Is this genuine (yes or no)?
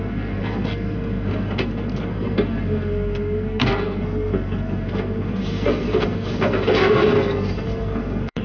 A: no